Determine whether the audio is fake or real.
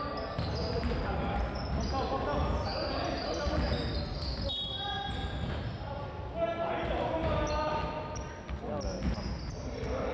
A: real